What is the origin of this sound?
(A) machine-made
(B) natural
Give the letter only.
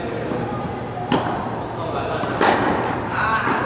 B